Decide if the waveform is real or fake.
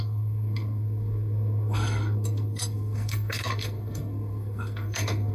fake